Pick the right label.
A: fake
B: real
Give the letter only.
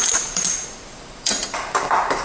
A